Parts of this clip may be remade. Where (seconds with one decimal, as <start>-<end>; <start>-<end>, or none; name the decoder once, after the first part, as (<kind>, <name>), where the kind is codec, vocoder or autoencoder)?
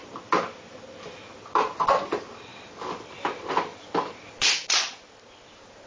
none